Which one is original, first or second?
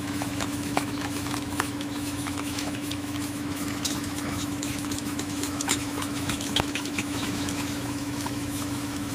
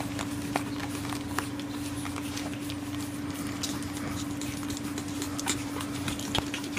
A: second